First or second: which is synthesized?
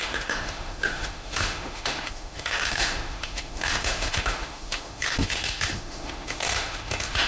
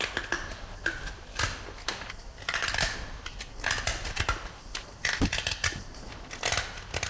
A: first